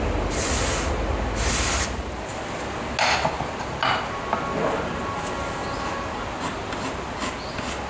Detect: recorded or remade recorded